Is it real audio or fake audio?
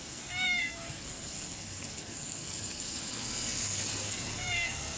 fake